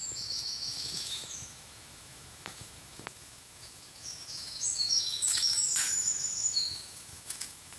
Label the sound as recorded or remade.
remade